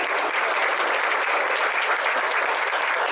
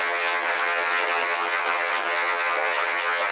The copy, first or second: second